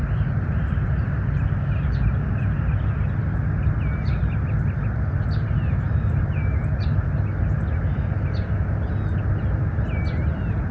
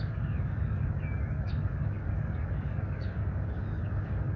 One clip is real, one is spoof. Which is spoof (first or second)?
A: second